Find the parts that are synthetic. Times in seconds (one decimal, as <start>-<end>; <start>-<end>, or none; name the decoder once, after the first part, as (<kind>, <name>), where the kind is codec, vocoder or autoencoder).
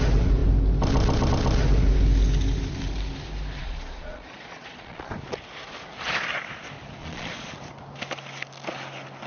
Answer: 3.6-5.1 (vocoder, Vocos); 7.0-7.5